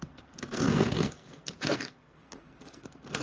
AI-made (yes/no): yes